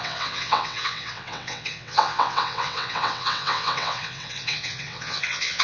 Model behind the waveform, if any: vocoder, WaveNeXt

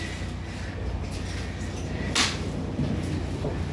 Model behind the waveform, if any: none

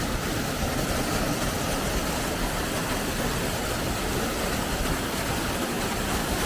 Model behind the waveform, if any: none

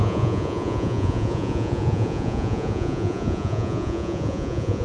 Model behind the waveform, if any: vocoder, Vocos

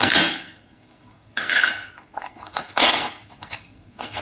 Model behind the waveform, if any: codec, SNAC